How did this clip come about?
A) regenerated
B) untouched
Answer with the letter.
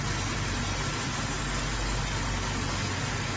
B